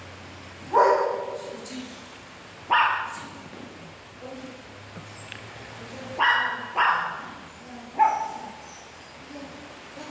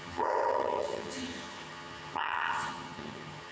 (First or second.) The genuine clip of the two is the first